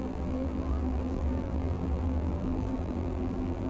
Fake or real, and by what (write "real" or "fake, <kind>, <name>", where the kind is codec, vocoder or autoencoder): fake, vocoder, BigVGAN v2